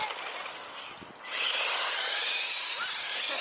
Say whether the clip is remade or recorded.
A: recorded